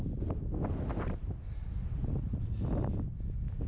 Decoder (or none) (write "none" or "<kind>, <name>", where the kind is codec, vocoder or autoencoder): none